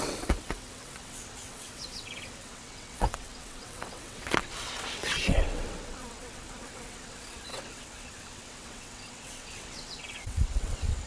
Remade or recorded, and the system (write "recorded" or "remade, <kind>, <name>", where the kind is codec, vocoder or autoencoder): remade, vocoder, WaveNeXt